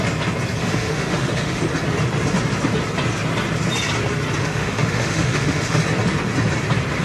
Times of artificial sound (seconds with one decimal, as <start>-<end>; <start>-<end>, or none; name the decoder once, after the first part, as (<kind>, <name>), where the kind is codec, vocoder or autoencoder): 0.6-1.6 (autoencoder, DAC-VAE); 4.4-5.8